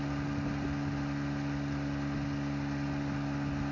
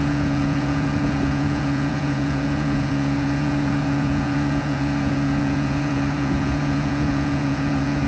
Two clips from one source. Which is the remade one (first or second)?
second